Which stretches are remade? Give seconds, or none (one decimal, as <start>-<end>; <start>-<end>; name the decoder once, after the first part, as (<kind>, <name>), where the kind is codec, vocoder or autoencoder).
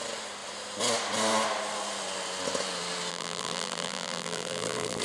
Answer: 3.1-5.0 (vocoder, BigVGAN v2)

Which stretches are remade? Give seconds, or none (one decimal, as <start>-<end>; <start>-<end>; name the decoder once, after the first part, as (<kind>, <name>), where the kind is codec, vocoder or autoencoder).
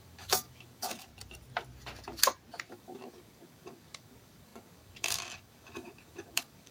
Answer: 0.0-1.1 (codec, DAC); 2.7-6.7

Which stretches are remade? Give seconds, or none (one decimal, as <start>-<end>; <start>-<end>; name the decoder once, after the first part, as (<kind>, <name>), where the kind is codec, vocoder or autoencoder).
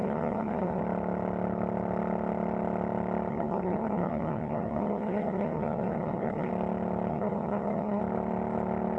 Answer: 0.0-0.8 (codec, SNAC); 3.3-6.5; 7.1-8.0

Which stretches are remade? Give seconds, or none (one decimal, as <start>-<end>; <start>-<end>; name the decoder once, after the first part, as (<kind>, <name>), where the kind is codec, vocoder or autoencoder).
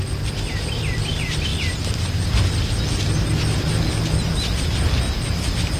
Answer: none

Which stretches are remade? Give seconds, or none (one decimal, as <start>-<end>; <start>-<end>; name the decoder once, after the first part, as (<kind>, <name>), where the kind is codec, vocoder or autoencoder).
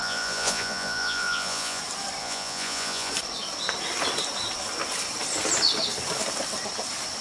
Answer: 0.0-1.8 (vocoder, Vocos); 2.2-3.1